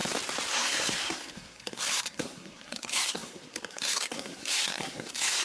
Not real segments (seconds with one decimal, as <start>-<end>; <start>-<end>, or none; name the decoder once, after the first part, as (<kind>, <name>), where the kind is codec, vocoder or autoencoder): 0.5-5.4 (codec, SNAC)